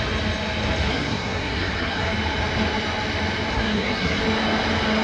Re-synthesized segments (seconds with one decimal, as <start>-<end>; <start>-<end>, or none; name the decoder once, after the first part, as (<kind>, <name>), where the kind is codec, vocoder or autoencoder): 0.9-2.1 (codec, SNAC); 3.5-4.2